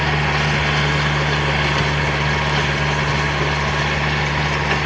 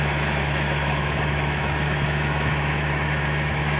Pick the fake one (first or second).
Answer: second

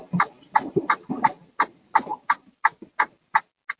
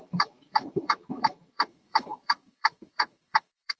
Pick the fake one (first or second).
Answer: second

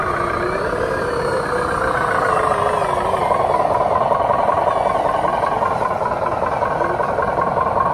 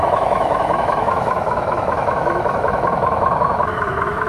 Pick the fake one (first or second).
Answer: second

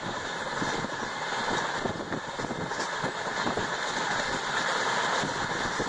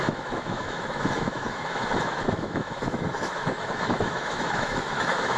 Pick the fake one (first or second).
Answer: second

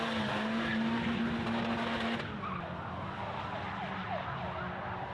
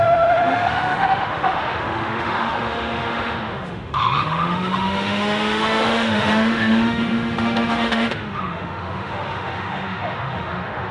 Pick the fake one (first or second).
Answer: second